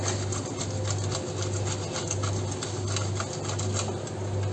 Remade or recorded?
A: recorded